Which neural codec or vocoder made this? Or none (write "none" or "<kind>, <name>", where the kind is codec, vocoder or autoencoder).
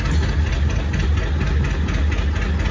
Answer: none